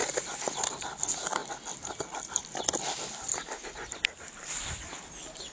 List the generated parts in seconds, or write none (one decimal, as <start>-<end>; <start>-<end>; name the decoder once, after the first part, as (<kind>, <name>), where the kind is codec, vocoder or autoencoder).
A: none